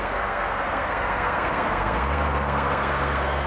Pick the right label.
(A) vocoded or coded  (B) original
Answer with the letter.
A